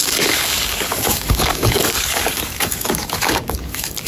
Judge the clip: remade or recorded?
remade